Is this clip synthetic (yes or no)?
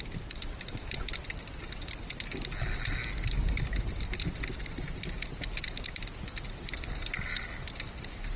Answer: no